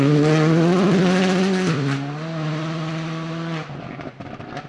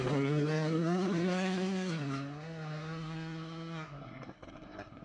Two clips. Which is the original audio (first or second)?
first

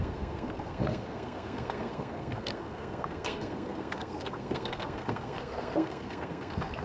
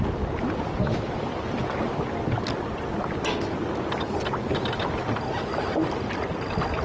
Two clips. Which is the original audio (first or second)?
second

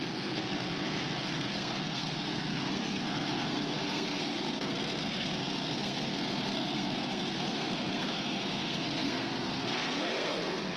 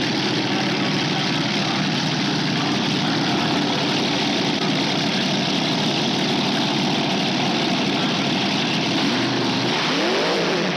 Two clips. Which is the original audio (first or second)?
second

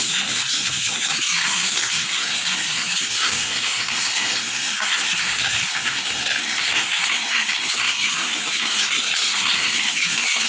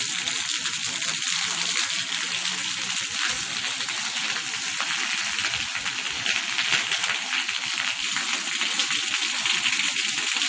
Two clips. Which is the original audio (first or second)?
second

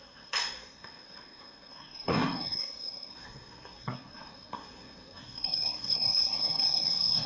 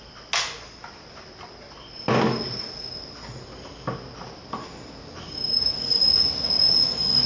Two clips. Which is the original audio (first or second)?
second